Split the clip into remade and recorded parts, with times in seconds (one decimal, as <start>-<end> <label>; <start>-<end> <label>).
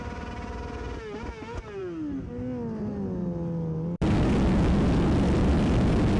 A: 0.0-6.2 recorded